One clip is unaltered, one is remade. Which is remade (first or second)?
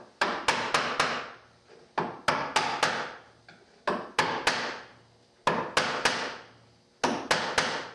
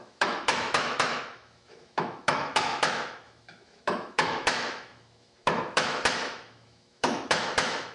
second